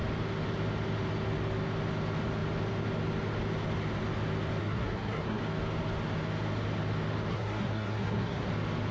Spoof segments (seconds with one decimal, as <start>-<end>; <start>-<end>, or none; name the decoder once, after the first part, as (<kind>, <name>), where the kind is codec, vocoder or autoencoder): 4.6-5.4 (codec, SNAC); 7.3-8.5